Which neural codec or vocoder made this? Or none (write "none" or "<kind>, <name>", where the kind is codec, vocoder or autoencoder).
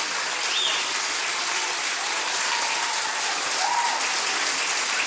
none